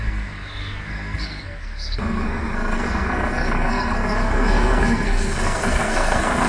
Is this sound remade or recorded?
remade